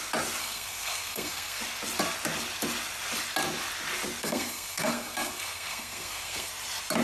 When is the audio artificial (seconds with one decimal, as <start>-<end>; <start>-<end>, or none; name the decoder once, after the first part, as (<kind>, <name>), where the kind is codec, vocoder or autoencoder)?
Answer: 0.4-1.6 (codec, SNAC); 4.2-6.5